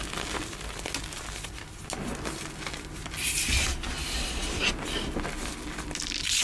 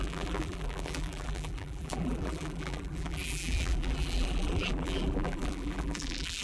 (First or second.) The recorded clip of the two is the first